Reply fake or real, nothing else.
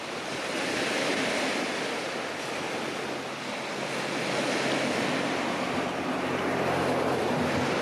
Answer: real